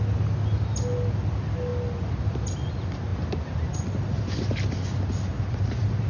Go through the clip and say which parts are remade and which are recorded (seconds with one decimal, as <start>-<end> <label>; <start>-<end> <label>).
0.0-6.1 recorded